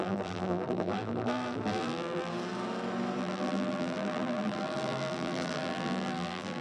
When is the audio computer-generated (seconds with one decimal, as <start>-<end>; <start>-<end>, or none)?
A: 0.0-2.3; 3.2-6.6